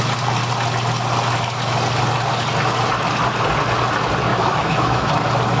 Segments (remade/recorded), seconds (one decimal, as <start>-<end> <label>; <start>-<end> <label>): 0.0-4.3 recorded; 4.3-5.1 remade; 5.1-5.6 recorded